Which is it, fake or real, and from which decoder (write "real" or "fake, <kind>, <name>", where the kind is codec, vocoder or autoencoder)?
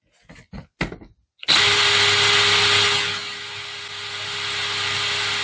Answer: real